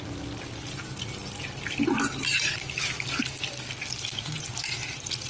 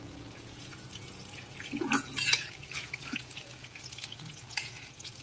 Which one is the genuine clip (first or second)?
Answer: first